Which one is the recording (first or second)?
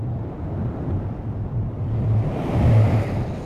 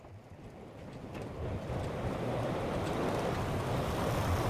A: first